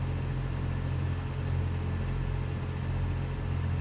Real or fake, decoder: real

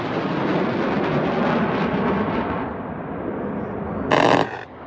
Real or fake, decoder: real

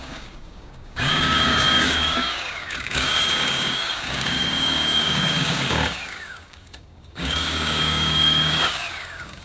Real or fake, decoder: fake, codec, DAC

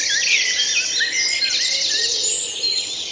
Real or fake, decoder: real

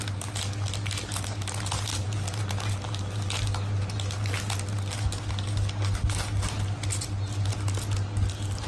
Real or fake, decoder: real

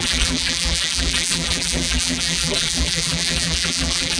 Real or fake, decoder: fake, vocoder, BigVGAN v2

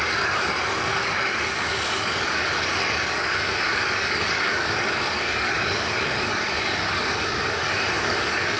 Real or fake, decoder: fake, codec, DAC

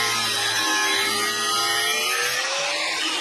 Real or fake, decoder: real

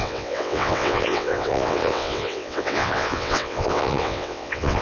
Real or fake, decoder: fake, vocoder, WaveNeXt